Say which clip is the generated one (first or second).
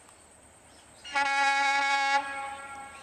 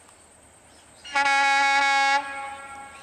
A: first